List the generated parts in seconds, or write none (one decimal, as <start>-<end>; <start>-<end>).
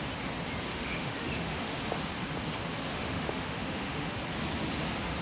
0.7-1.8; 2.9-4.2